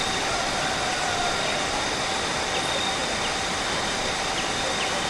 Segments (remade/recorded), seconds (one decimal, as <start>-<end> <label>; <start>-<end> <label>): 0.0-2.5 remade; 2.5-3.0 recorded; 3.0-5.1 remade